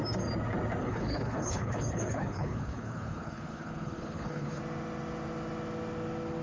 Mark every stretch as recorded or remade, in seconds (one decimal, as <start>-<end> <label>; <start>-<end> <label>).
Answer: 0.0-0.8 recorded; 0.8-4.6 remade; 4.6-6.4 recorded